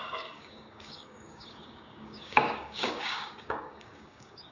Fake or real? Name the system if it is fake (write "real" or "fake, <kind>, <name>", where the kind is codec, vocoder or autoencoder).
fake, codec, DAC